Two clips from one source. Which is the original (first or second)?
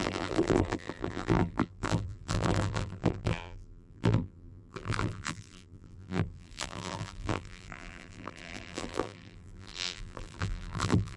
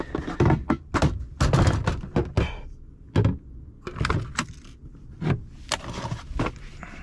second